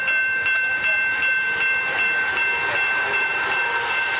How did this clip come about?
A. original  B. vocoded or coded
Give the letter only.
B